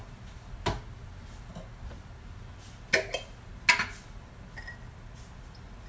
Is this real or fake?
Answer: real